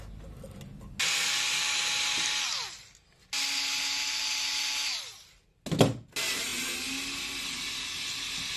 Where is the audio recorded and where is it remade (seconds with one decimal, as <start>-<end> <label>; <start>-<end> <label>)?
0.0-8.6 recorded